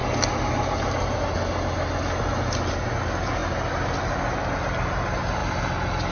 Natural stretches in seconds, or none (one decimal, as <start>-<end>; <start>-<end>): 0.0-6.1